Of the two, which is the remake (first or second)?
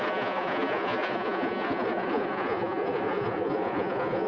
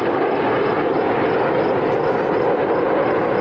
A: first